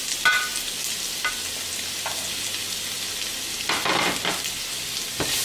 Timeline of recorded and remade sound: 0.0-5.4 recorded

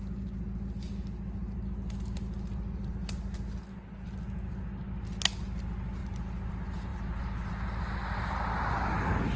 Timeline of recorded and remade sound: 0.0-9.4 recorded

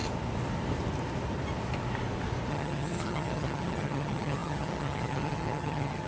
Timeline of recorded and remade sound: 0.0-2.5 recorded; 2.5-6.1 remade